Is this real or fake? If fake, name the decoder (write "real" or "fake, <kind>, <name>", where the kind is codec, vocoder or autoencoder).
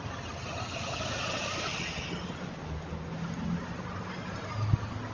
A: real